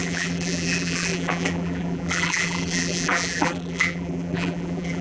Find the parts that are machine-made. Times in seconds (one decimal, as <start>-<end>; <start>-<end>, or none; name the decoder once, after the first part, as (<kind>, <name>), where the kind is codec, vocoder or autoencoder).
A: 0.0-5.0 (vocoder, BigVGAN v2)